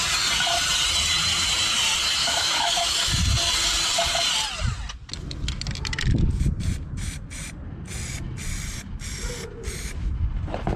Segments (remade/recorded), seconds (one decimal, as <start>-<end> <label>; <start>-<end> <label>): 0.0-2.2 recorded; 2.2-3.1 remade; 3.1-10.8 recorded